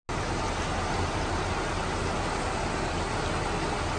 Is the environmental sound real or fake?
real